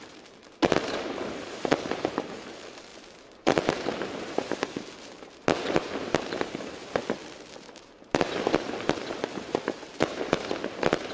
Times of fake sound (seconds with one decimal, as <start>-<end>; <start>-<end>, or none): 0.0-7.0; 7.6-11.1